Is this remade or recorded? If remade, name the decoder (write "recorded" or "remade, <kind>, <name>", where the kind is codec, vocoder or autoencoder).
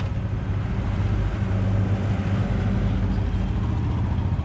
recorded